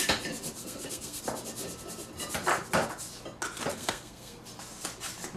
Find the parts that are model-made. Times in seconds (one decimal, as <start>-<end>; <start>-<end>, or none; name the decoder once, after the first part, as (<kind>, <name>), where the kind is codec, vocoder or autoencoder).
0.6-1.2 (codec, SNAC); 3.7-4.4